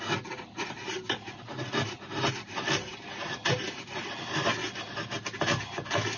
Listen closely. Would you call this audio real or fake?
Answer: real